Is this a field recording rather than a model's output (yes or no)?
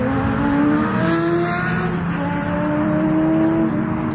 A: yes